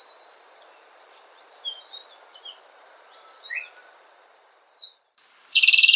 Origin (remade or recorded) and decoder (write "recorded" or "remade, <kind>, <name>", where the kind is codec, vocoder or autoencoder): remade, vocoder, BigVGAN v2